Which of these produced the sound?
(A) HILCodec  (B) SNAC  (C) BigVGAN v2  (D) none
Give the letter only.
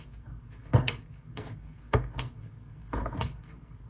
B